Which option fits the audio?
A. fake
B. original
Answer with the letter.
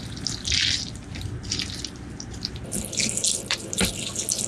B